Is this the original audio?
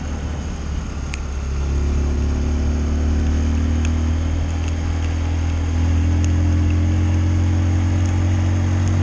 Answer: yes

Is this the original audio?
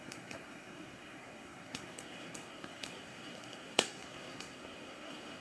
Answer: no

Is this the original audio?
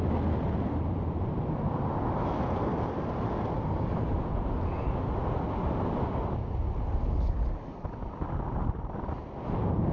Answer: yes